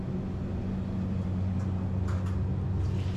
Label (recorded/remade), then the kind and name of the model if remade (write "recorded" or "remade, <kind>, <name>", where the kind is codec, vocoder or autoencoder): recorded